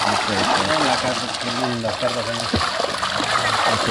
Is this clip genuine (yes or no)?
yes